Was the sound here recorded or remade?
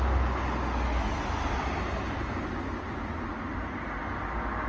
recorded